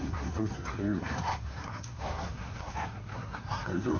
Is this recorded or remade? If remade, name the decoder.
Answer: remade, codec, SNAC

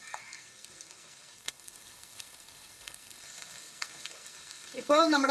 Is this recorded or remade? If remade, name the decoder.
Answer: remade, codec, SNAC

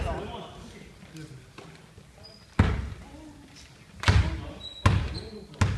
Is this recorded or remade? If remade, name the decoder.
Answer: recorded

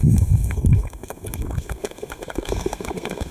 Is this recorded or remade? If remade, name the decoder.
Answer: remade, codec, SNAC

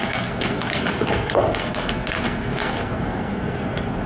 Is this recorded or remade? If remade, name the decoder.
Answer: remade, codec, SNAC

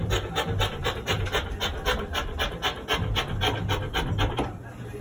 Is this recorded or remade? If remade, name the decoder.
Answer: recorded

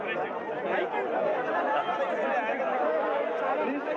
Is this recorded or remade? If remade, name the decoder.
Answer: recorded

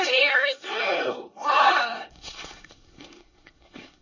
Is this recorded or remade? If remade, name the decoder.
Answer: remade, codec, SNAC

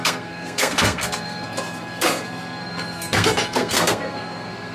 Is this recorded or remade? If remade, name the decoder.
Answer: remade, codec, SNAC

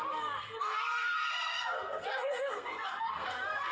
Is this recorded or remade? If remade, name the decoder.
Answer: remade, codec, SNAC